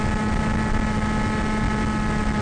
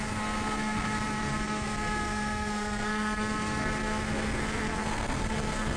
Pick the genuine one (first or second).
first